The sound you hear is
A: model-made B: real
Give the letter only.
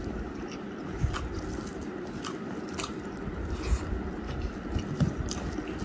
B